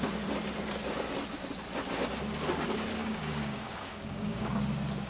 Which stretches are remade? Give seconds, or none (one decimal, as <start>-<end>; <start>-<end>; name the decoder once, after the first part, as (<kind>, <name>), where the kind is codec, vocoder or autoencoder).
3.0-4.6 (codec, DAC)